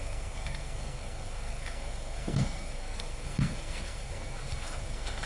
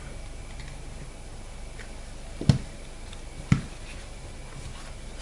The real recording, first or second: second